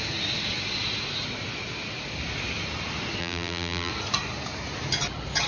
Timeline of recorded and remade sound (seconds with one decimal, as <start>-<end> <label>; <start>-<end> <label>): 0.0-3.2 recorded; 3.2-3.9 remade; 3.9-5.5 recorded